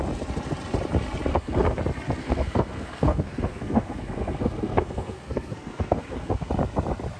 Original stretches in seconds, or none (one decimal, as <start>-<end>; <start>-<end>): 0.0-1.3; 1.8-2.2; 6.5-7.2